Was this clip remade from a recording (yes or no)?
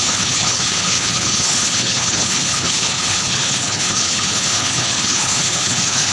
yes